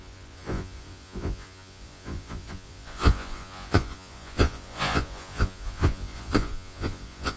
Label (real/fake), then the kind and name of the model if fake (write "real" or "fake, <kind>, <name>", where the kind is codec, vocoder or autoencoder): fake, vocoder, Vocos